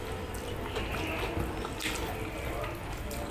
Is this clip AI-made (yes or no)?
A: no